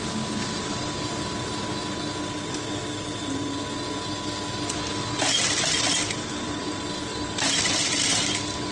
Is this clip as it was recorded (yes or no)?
yes